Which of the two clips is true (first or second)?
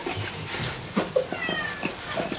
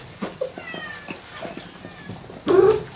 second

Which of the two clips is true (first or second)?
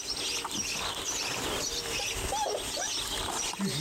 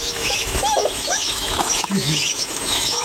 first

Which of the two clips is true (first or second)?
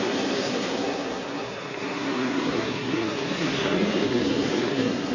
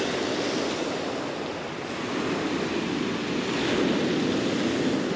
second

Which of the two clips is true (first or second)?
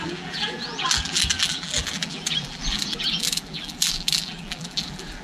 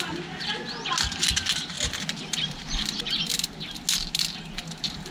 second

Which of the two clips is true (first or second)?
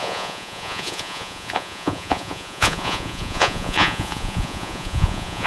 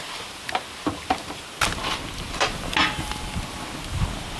second